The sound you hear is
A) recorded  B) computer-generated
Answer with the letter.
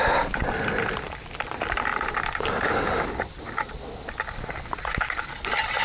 A